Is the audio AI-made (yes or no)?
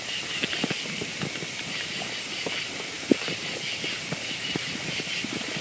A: no